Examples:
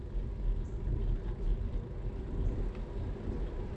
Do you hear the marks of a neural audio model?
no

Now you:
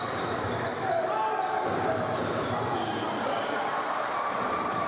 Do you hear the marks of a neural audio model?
yes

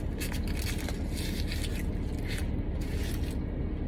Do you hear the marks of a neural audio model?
no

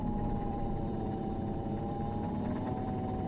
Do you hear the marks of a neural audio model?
yes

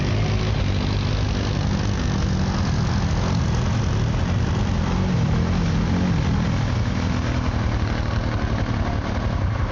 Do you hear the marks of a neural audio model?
no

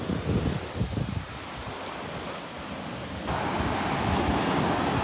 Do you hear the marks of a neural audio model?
no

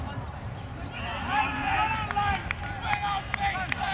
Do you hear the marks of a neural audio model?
no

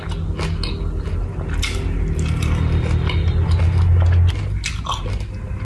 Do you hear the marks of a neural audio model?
no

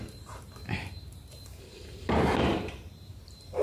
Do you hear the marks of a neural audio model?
yes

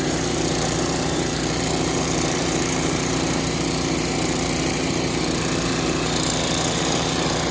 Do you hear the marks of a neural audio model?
yes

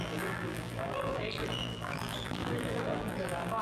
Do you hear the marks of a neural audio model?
yes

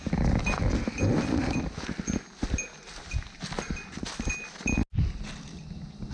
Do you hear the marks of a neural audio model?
no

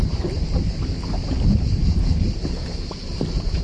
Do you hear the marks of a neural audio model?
yes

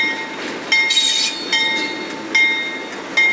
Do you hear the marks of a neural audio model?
no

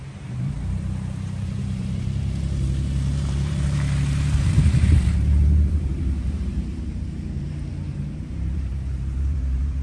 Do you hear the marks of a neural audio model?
yes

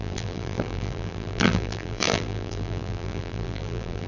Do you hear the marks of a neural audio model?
yes